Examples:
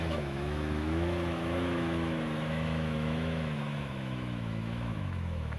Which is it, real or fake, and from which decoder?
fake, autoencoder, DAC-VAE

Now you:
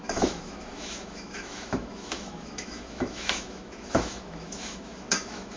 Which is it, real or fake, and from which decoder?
fake, autoencoder, DAC-VAE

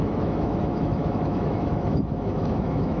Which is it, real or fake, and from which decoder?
fake, autoencoder, DAC-VAE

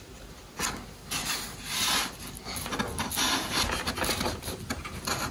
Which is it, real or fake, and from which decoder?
real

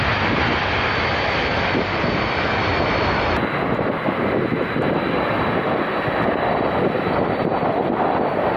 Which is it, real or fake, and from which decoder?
real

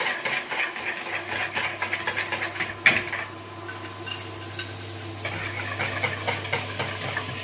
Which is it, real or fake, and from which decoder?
real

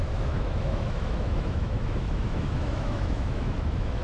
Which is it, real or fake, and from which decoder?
fake, autoencoder, DAC-VAE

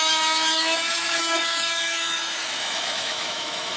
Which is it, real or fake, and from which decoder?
fake, autoencoder, DAC-VAE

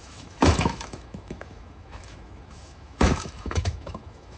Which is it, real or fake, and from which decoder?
fake, autoencoder, DAC-VAE